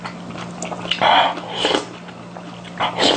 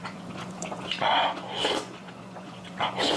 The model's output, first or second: second